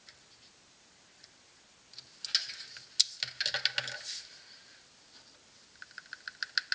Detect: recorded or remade recorded